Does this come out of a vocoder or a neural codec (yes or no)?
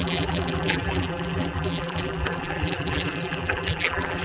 yes